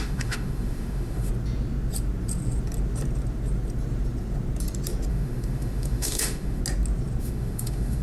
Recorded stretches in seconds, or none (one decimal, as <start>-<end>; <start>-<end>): 1.3-5.1; 6.6-7.2